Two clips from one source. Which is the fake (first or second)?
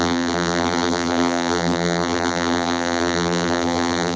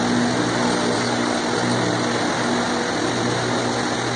first